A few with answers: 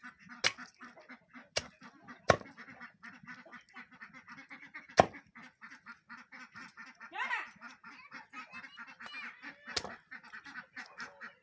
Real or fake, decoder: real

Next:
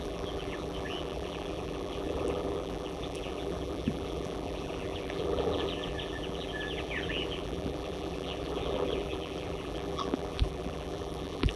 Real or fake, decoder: fake, vocoder, BigVGAN v2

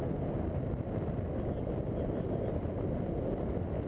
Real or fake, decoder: real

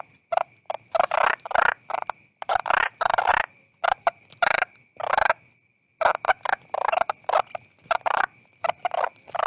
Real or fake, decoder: fake, vocoder, BigVGAN v2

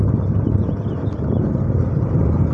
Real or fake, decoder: real